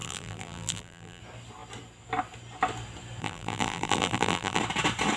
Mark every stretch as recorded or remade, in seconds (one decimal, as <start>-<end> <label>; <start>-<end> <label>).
0.0-1.2 remade; 1.2-3.2 recorded; 3.2-4.6 remade; 4.6-5.2 recorded